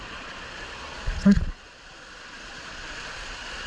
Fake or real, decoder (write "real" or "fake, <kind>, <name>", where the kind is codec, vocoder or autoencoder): fake, vocoder, Vocos